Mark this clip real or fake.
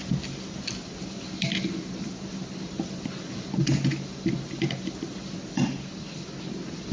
real